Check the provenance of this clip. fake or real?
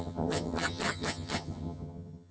fake